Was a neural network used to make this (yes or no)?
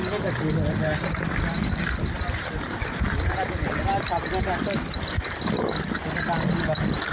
no